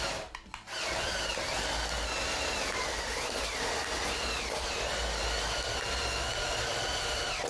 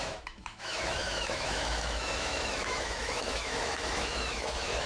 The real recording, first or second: first